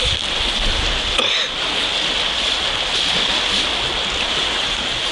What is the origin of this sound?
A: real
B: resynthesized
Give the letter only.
A